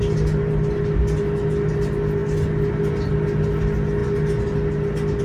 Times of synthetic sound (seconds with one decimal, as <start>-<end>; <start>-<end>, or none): none